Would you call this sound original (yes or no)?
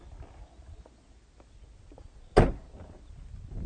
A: yes